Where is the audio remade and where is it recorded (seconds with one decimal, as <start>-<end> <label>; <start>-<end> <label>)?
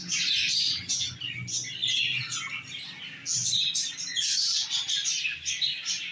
0.0-6.1 recorded